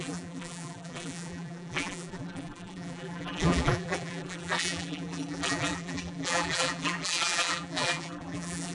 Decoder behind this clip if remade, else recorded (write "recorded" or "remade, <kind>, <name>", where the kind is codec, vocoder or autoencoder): remade, vocoder, BigVGAN v2